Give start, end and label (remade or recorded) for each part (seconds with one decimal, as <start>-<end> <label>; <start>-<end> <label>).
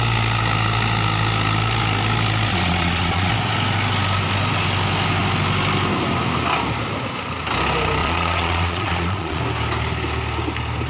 0.0-2.5 recorded; 2.5-3.3 remade; 3.3-8.0 recorded; 8.0-9.4 remade; 9.4-10.9 recorded